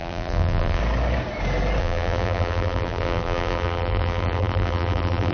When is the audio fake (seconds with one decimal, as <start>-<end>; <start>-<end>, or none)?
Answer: 0.0-0.8; 1.8-5.3